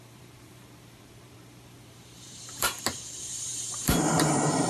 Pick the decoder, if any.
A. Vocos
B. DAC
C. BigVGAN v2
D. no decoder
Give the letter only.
C